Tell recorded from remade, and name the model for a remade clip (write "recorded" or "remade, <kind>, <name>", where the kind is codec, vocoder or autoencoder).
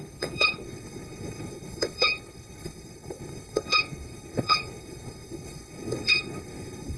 remade, codec, HILCodec